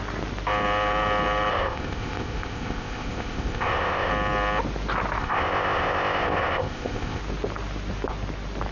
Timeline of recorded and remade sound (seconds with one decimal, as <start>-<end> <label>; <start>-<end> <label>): 0.0-1.5 recorded; 1.5-4.1 remade; 4.1-5.2 recorded; 5.2-7.2 remade; 7.2-8.7 recorded

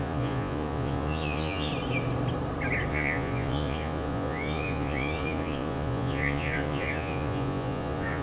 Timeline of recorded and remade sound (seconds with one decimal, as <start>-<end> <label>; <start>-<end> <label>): 0.0-1.7 remade; 1.7-2.9 recorded; 2.9-8.2 remade

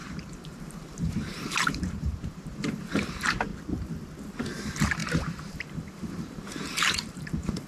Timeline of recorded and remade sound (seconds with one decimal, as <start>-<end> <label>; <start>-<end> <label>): 0.0-3.5 remade; 3.5-4.5 recorded; 4.5-7.7 remade